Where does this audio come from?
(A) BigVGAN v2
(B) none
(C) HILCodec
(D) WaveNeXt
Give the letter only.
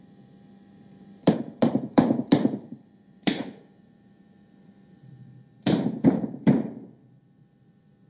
A